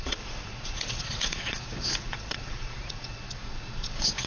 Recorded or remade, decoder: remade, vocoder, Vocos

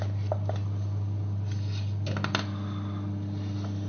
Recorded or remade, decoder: recorded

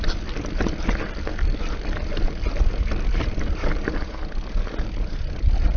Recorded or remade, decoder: recorded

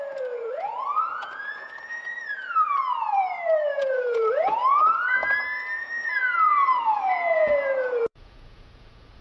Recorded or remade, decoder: remade, vocoder, Vocos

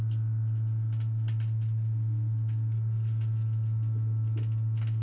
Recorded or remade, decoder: recorded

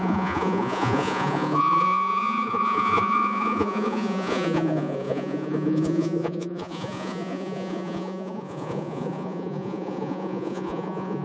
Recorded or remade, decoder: remade, vocoder, Vocos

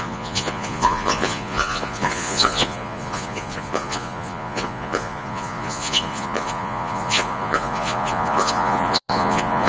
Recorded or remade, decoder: remade, vocoder, Vocos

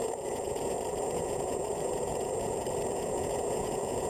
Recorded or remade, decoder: remade, vocoder, Vocos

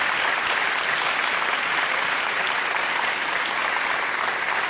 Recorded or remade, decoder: recorded